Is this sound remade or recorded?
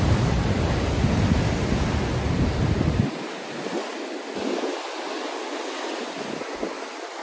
recorded